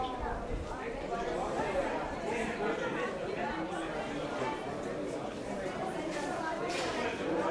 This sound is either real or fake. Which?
fake